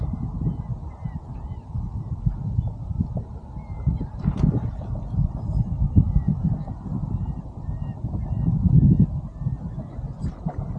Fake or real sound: real